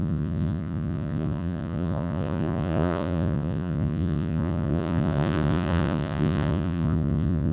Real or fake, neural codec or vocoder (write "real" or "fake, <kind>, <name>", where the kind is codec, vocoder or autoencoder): fake, vocoder, Vocos